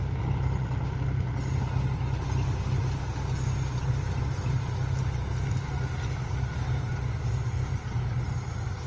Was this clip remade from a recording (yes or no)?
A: no